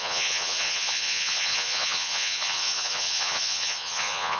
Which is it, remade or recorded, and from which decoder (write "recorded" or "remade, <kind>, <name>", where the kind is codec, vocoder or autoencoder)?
remade, vocoder, Vocos